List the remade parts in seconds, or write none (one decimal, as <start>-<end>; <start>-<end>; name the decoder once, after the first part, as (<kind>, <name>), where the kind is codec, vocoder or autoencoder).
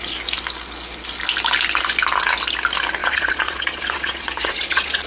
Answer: 3.0-5.1 (vocoder, Vocos)